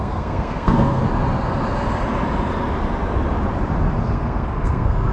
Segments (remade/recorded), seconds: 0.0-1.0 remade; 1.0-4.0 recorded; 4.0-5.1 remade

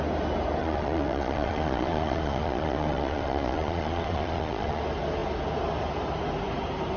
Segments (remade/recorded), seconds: 0.0-0.6 recorded; 0.6-4.8 remade; 4.8-7.0 recorded

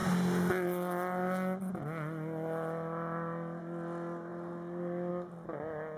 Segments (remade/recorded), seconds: 0.0-6.0 recorded

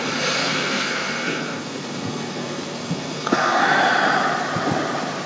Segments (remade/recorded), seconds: 0.0-0.4 recorded; 0.4-3.6 remade; 3.6-5.3 recorded

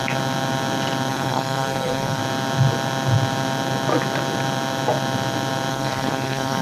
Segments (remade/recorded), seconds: 0.0-1.1 recorded; 1.1-2.2 remade; 2.2-5.7 recorded; 5.7-6.6 remade

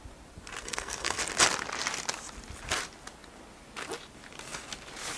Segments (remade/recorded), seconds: 0.0-0.6 recorded; 0.6-1.2 remade; 1.2-5.2 recorded

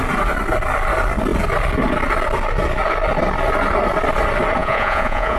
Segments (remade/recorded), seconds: 0.0-4.6 recorded; 4.6-5.4 remade